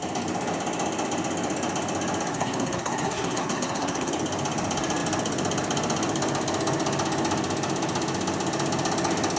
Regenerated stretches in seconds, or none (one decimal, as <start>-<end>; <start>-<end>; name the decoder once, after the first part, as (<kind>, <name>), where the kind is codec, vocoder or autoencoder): 2.3-4.1 (codec, SNAC)